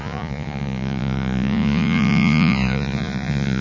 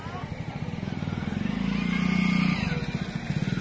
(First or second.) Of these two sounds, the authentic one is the second